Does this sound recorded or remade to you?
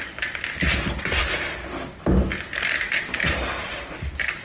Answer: recorded